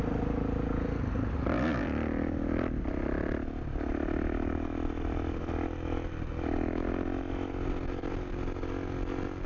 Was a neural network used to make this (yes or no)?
no